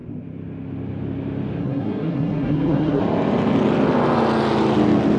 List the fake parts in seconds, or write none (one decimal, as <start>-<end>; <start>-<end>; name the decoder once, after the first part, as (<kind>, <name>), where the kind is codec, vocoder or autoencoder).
1.6-3.0 (codec, SNAC)